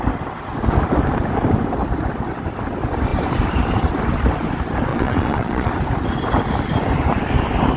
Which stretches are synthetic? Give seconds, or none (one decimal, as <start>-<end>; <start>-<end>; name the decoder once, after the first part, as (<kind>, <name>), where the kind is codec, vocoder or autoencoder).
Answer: 4.9-5.7 (vocoder, Vocos)